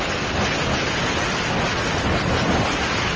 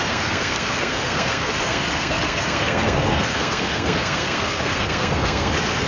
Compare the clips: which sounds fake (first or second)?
second